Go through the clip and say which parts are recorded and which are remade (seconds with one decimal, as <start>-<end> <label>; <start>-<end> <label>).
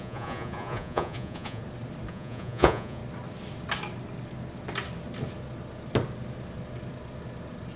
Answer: 0.0-1.6 remade; 1.6-2.1 recorded; 2.1-3.0 remade; 3.0-7.8 recorded